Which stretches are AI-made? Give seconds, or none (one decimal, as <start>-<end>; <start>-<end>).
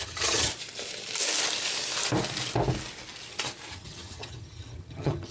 0.0-0.5; 3.7-5.3